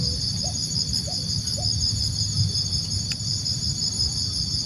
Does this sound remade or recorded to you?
recorded